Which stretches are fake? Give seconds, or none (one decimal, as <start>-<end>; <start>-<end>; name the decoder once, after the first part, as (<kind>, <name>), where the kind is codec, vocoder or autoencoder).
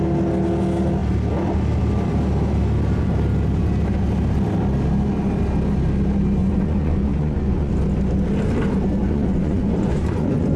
6.4-7.7 (vocoder, Vocos); 9.0-10.6